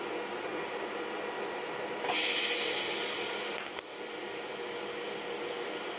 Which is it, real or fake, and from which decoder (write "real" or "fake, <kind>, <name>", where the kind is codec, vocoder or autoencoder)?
real